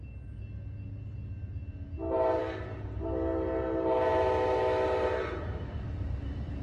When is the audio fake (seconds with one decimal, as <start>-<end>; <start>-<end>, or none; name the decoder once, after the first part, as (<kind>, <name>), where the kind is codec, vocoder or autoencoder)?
none